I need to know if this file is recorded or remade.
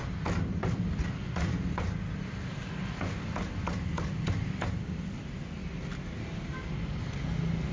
recorded